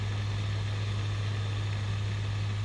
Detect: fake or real real